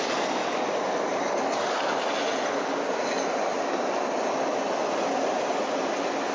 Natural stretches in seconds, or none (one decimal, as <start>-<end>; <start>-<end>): 0.0-6.3